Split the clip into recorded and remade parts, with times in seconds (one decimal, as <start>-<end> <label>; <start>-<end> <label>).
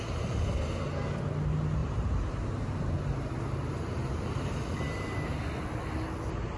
0.0-1.8 recorded; 1.8-5.4 remade; 5.4-6.6 recorded